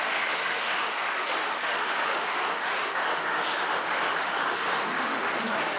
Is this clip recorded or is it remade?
remade